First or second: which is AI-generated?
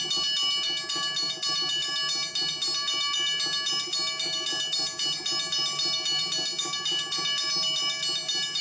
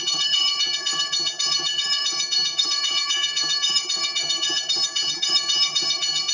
second